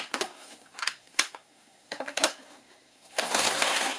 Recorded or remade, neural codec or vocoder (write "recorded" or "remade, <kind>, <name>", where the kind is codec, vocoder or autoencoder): remade, codec, SNAC